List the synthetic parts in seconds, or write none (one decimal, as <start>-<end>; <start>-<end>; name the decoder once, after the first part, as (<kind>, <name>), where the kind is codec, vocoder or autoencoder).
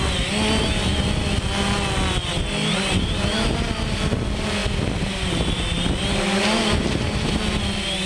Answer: none